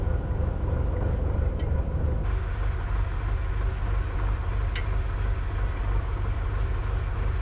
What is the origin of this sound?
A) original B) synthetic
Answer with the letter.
A